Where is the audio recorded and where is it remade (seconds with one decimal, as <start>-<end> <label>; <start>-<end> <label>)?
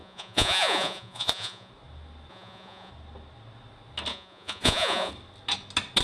0.0-1.7 remade; 1.7-2.3 recorded; 2.3-2.9 remade; 2.9-4.1 recorded; 4.1-5.1 remade; 5.1-6.0 recorded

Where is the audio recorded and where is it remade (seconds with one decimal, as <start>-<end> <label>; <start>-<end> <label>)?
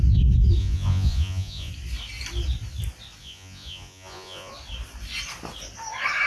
0.0-0.6 recorded; 0.6-1.7 remade; 1.7-3.2 recorded; 3.2-4.5 remade; 4.5-6.3 recorded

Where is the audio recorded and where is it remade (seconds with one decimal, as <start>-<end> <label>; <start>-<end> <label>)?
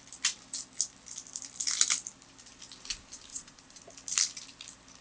0.0-3.3 recorded; 3.3-3.8 remade; 3.8-5.0 recorded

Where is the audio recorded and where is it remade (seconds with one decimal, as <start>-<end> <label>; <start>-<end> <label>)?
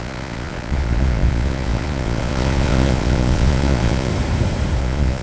0.0-4.1 remade; 4.1-4.8 recorded; 4.8-5.2 remade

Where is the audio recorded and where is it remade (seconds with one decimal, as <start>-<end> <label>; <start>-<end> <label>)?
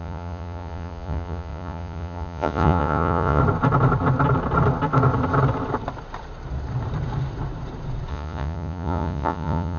0.0-3.4 remade; 3.4-8.1 recorded; 8.1-9.8 remade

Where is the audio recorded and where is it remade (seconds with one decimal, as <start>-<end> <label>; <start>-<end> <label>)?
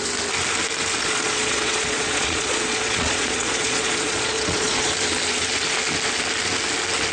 0.0-1.0 recorded; 1.0-4.9 remade; 4.9-7.1 recorded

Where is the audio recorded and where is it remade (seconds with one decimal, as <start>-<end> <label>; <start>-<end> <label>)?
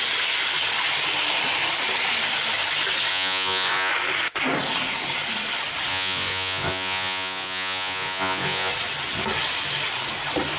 0.0-3.1 recorded; 3.1-3.9 remade; 3.9-5.9 recorded; 5.9-8.7 remade; 8.7-10.6 recorded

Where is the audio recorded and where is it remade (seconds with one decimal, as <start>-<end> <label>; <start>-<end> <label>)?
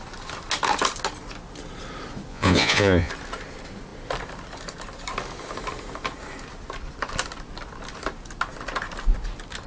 0.0-2.3 recorded; 2.3-3.1 remade; 3.1-9.7 recorded